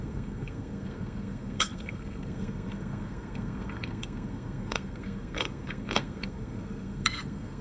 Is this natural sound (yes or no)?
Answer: no